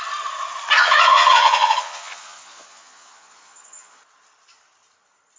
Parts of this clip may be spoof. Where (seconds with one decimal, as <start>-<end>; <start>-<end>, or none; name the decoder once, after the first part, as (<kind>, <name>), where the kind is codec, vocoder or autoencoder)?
0.8-4.0 (vocoder, Vocos)

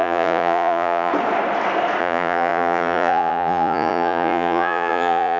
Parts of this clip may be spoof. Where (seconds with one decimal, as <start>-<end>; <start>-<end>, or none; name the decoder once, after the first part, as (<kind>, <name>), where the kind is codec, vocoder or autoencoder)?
0.0-1.1 (vocoder, Vocos); 2.0-5.4

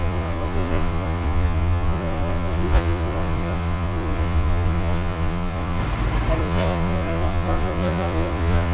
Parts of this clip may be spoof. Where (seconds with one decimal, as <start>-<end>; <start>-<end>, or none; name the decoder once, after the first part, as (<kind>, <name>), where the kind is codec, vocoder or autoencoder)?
0.0-5.8 (vocoder, Vocos); 6.4-8.7

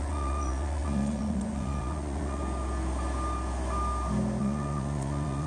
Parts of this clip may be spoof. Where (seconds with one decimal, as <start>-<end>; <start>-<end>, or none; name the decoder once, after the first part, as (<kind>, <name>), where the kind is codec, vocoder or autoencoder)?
0.0-2.4 (vocoder, Vocos); 4.4-5.5

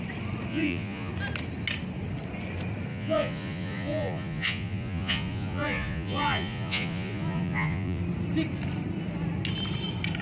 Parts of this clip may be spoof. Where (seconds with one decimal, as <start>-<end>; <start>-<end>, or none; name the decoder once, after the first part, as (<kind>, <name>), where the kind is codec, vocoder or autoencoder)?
0.5-1.1 (vocoder, Vocos); 2.9-8.0

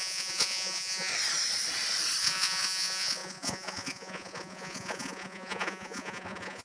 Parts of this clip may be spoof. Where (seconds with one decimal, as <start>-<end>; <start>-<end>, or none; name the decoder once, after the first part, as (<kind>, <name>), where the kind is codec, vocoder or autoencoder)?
0.0-1.1 (vocoder, Vocos); 2.2-6.6